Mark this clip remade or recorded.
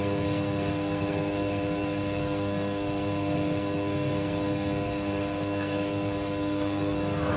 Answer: remade